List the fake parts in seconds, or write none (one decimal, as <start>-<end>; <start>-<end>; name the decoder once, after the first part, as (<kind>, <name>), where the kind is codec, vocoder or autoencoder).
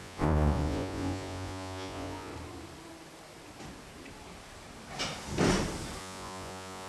0.0-2.3 (vocoder, Vocos); 6.0-6.9